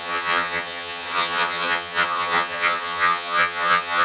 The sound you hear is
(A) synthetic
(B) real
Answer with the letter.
A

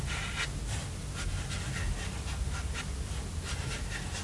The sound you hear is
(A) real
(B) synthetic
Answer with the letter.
A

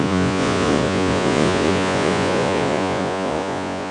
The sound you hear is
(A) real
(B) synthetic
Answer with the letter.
B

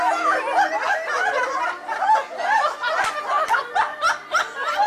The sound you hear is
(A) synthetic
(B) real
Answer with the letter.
B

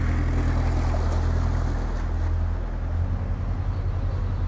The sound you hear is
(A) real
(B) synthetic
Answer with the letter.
A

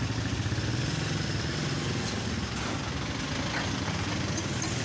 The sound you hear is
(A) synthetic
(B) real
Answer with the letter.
B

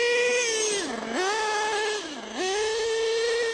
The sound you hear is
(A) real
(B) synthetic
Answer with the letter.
A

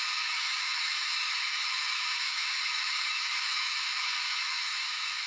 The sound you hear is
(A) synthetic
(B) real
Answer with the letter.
A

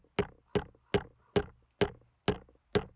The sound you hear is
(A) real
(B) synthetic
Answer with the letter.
A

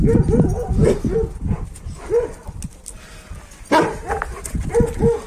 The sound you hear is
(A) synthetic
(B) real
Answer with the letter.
B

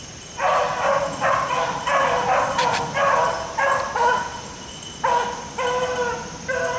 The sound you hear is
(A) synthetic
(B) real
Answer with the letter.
B